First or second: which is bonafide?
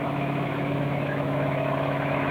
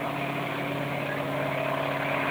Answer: second